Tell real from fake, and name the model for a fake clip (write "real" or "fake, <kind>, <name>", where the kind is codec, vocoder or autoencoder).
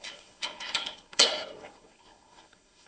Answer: fake, codec, SNAC